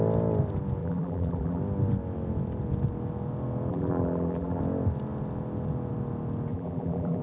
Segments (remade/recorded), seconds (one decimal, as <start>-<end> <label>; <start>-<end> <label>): 0.0-0.8 recorded; 0.8-1.6 remade; 1.6-3.7 recorded; 3.7-4.6 remade; 4.6-6.5 recorded; 6.5-7.2 remade